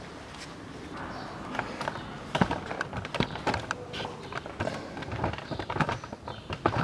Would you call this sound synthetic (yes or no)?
no